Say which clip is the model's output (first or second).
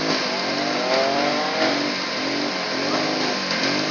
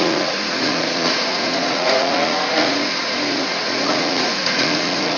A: second